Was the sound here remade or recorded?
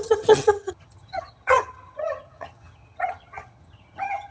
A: remade